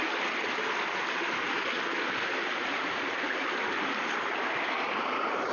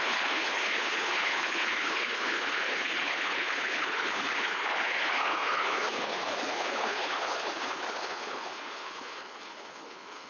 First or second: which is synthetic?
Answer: second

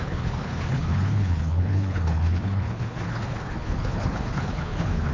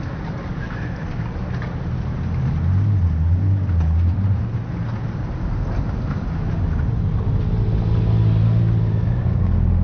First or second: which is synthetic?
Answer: first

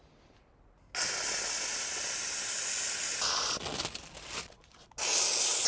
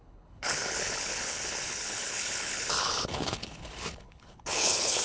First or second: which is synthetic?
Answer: second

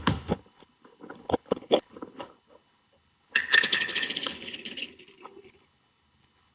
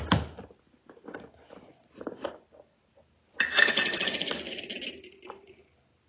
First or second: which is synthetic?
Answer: first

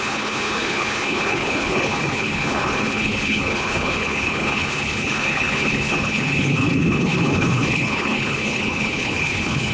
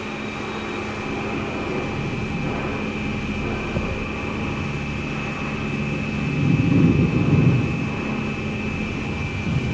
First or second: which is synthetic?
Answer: first